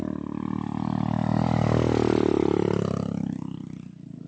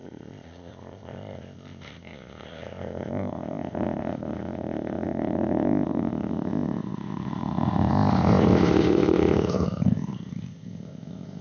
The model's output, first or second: second